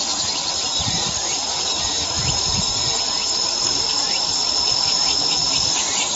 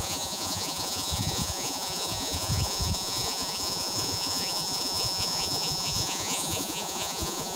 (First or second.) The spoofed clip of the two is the second